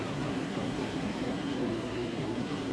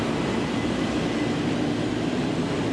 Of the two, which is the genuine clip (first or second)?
second